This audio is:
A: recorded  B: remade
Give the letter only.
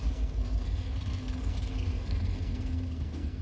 B